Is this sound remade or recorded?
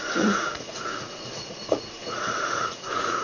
remade